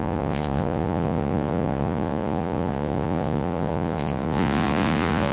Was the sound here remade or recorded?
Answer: remade